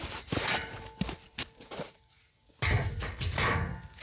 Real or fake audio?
real